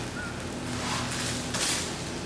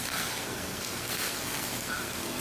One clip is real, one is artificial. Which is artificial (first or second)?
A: second